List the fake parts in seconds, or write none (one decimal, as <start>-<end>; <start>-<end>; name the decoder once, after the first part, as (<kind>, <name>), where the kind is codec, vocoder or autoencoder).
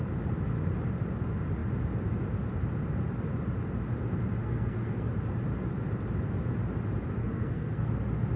4.4-5.1 (codec, SNAC); 7.2-7.9